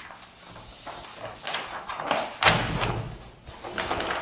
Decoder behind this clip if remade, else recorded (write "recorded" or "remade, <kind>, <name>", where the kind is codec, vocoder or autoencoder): recorded